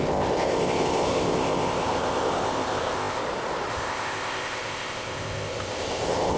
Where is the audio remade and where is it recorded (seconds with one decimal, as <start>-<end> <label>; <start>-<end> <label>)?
0.0-3.2 remade; 3.2-3.7 recorded; 3.7-6.4 remade